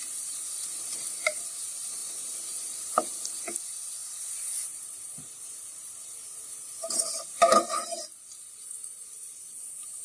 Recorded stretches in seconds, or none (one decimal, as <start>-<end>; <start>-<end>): none